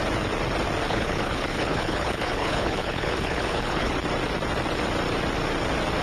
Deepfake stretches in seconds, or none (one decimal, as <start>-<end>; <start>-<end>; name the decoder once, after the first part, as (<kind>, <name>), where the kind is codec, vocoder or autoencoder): 0.9-3.9 (codec, HILCodec)